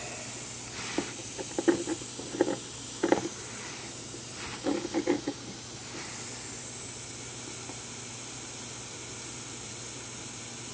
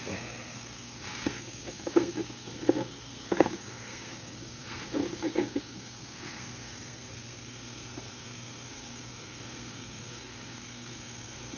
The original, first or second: first